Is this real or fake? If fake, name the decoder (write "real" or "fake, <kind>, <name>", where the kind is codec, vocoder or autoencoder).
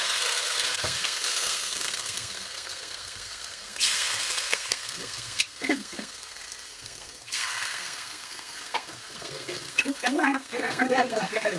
fake, codec, SNAC